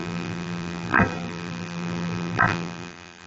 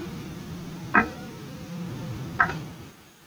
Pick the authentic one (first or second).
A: second